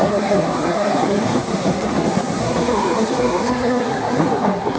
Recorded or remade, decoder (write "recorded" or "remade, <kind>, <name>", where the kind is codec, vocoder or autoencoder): remade, codec, SNAC